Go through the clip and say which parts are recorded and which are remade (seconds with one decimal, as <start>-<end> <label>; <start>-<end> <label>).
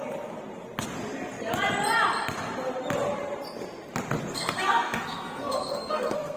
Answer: 0.0-4.3 recorded; 4.3-6.4 remade